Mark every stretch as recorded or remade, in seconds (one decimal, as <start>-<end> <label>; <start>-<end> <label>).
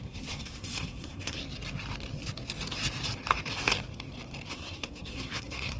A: 0.0-1.4 remade; 1.4-4.5 recorded; 4.5-5.8 remade